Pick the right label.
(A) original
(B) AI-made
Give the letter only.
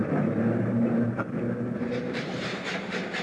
B